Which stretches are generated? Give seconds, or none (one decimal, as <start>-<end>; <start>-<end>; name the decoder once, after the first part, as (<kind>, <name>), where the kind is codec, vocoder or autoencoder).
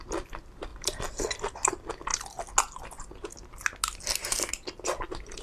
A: none